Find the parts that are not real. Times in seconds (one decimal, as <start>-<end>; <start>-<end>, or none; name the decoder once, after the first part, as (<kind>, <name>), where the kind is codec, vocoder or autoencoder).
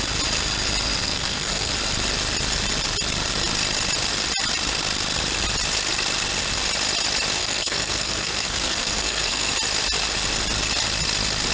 1.0-1.7 (codec, SNAC); 7.4-9.5